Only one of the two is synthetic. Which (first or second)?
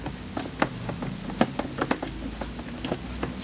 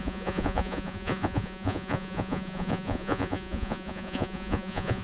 second